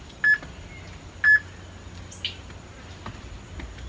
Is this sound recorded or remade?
recorded